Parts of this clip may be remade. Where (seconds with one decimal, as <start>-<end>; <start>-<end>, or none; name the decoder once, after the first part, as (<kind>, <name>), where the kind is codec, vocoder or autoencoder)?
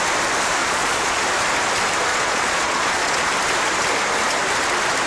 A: 0.6-1.2 (vocoder, Vocos); 2.1-3.3